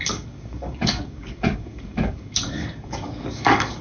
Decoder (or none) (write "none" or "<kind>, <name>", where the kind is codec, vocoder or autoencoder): codec, DAC